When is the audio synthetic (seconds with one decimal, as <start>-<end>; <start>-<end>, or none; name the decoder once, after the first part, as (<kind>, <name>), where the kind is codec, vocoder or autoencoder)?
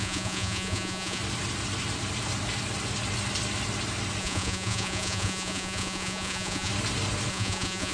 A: 0.0-1.2 (vocoder, Vocos); 4.2-6.7; 7.3-7.9